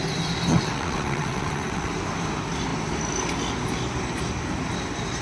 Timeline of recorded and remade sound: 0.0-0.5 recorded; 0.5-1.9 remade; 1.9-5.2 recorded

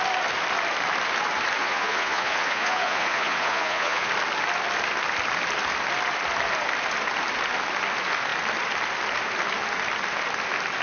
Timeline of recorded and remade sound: 0.0-1.6 recorded; 1.6-4.1 remade; 4.1-10.8 recorded

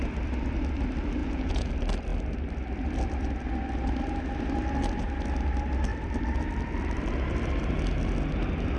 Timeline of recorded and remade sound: 0.0-1.2 recorded; 1.2-1.7 remade; 1.7-8.8 recorded

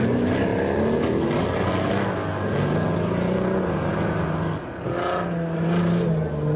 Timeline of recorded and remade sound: 0.0-6.6 recorded

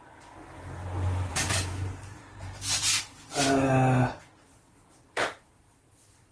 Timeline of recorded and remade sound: 0.0-1.3 recorded; 1.3-3.0 remade; 3.0-4.5 recorded; 4.5-5.6 remade; 5.6-6.3 recorded

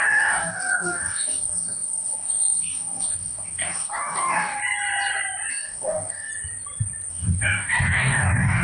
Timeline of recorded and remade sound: 0.0-4.6 remade; 4.6-5.5 recorded; 5.5-6.3 remade; 6.3-7.1 recorded; 7.1-8.6 remade

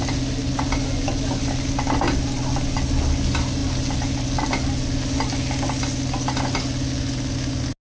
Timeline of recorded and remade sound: 0.0-7.8 recorded

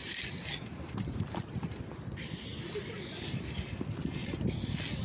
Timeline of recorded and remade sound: 0.0-1.8 remade; 1.8-5.0 recorded